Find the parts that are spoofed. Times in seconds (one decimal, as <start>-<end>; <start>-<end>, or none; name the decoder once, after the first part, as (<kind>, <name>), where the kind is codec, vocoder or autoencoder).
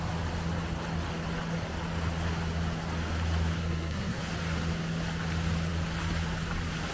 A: 3.6-4.2 (codec, SNAC)